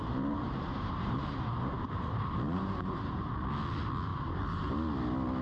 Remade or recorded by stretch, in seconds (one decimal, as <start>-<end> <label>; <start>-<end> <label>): 0.0-3.2 remade; 3.2-4.1 recorded; 4.1-4.7 remade; 4.7-5.4 recorded